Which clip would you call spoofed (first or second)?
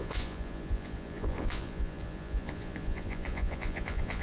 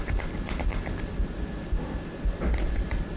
first